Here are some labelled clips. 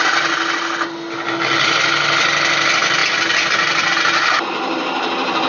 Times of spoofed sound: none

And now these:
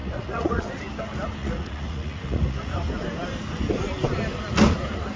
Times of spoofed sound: 0.0-0.8; 1.4-2.7

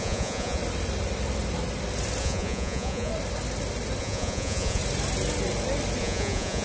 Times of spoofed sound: 0.0-0.6; 2.2-3.1; 4.0-4.8; 6.0-6.6